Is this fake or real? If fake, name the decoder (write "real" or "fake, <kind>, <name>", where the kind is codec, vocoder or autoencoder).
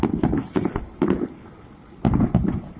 real